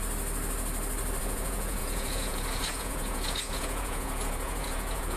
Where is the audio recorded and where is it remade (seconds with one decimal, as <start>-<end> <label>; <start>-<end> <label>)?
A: 0.0-1.2 recorded; 1.2-5.2 remade